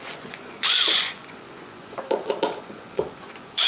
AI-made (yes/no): yes